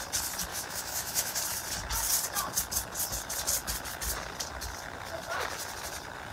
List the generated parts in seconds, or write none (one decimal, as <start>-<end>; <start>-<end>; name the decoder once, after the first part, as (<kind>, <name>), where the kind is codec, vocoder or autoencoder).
0.5-1.4 (autoencoder, DAC-VAE)